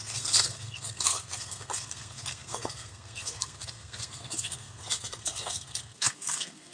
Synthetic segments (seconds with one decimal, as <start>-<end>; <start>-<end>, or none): 0.0-6.7